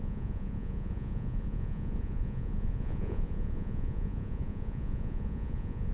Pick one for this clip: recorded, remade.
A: remade